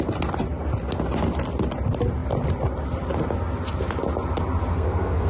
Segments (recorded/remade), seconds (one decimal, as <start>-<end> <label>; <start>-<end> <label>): 0.0-4.7 recorded; 4.7-5.3 remade